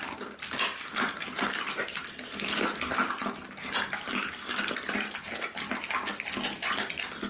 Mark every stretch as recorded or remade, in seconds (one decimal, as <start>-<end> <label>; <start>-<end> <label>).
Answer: 0.0-7.3 recorded